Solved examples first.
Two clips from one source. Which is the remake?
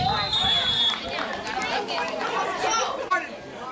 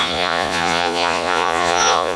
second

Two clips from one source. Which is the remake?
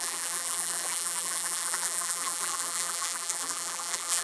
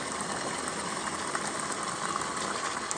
first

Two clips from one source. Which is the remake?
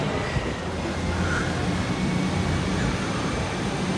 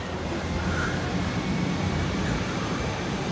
second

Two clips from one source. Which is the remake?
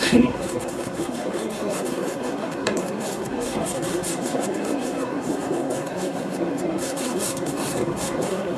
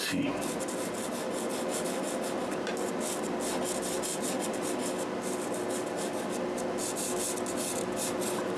first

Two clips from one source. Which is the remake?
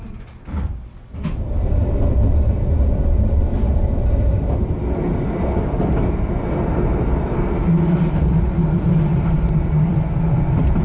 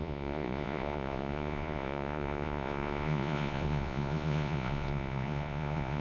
second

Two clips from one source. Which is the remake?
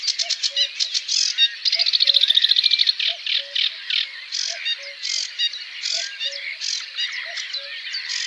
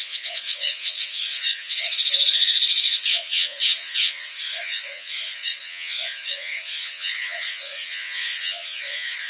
second